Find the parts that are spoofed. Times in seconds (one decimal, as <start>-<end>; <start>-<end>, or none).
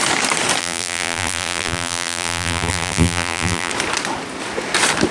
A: 0.6-3.7